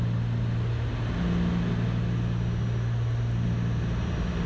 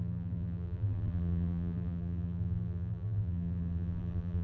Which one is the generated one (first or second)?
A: second